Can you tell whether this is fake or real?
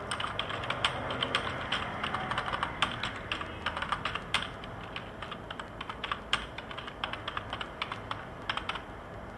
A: real